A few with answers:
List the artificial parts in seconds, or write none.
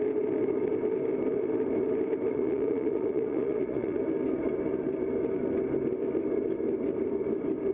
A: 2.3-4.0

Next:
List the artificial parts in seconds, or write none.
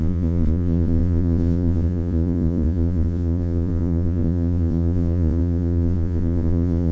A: 0.0-6.9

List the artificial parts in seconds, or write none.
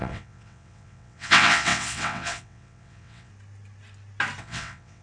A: 0.0-3.3; 4.4-5.0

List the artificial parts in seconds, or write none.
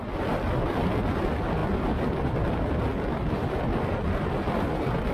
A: 0.0-5.1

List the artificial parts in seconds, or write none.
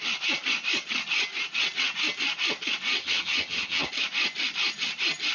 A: 3.0-3.9